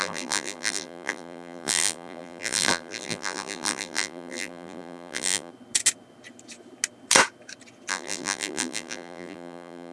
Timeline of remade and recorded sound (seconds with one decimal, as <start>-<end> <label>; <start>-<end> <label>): 0.0-5.5 remade; 5.5-7.9 recorded; 7.9-9.9 remade